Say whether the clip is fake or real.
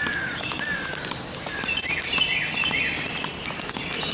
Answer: real